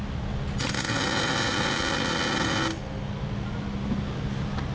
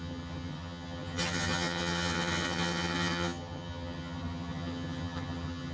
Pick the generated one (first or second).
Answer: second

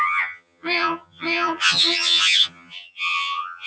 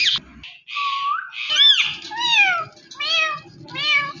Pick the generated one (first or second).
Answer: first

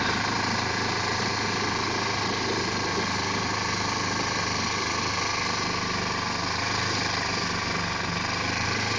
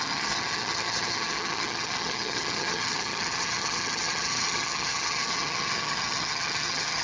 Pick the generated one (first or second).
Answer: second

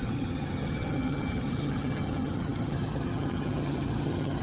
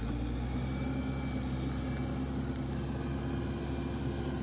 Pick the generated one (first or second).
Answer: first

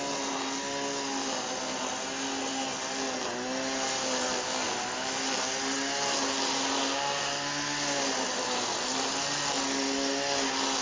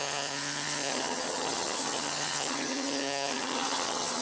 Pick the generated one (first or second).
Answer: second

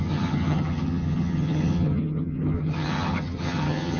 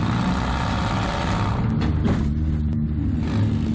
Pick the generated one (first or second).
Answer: first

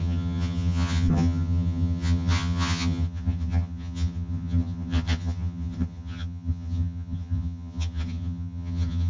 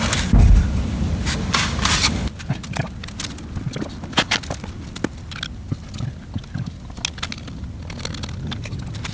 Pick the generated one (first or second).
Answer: first